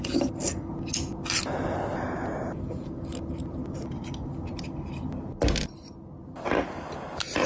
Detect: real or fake real